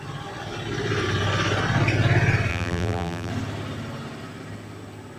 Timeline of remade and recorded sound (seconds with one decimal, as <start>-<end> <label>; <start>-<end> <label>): 0.0-2.5 recorded; 2.5-3.3 remade; 3.3-5.2 recorded